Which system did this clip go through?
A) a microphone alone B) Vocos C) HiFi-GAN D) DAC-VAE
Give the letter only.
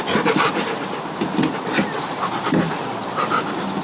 A